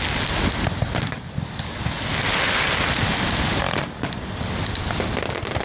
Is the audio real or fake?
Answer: real